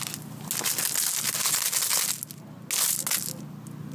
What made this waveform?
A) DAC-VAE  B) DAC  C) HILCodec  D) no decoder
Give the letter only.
D